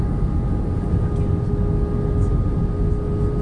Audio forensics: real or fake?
real